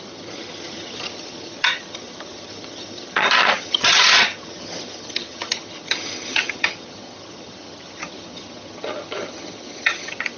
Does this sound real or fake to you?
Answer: fake